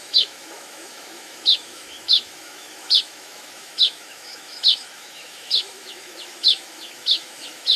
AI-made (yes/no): yes